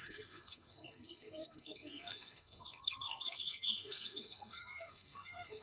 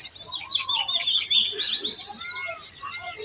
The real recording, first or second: second